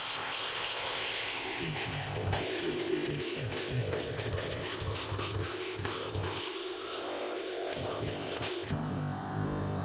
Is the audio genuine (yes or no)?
no